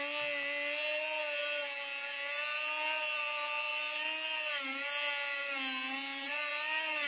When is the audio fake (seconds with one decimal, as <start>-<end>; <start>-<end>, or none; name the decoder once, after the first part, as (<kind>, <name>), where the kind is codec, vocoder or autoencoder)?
none